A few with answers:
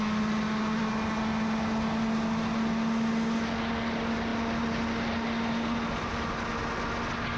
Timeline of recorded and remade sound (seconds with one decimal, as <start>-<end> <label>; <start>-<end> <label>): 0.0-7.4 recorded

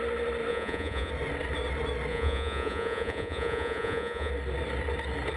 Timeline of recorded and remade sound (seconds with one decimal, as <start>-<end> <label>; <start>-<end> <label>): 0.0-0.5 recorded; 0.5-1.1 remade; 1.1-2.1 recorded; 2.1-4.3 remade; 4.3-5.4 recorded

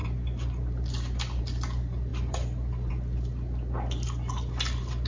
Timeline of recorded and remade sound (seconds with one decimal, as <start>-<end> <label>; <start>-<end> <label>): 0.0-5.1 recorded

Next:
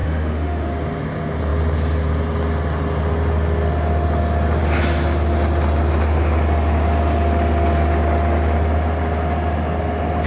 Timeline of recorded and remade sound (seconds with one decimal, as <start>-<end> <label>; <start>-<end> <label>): 0.0-0.7 remade; 0.7-10.3 recorded

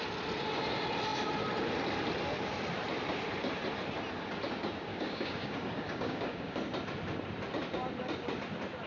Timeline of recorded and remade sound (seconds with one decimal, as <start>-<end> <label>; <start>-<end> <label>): 0.0-4.9 recorded; 4.9-6.6 remade; 6.6-8.9 recorded

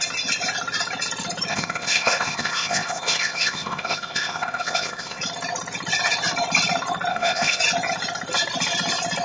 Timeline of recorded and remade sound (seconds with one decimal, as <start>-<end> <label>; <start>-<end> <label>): 0.0-1.5 recorded; 1.5-5.2 remade; 5.2-7.1 recorded; 7.1-7.6 remade; 7.6-9.2 recorded